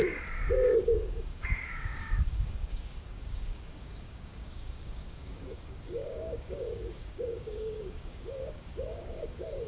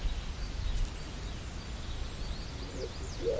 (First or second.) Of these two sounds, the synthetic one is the first